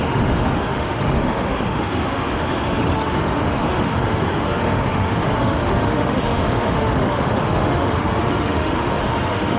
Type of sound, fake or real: fake